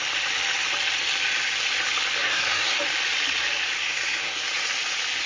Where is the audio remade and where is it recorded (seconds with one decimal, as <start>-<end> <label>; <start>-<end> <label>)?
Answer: 0.0-2.2 recorded; 2.2-2.8 remade; 2.8-3.8 recorded; 3.8-4.4 remade; 4.4-5.3 recorded